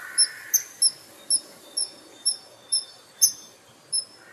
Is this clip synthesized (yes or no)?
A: no